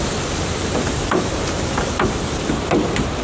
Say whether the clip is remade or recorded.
recorded